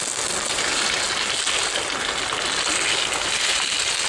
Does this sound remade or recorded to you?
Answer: recorded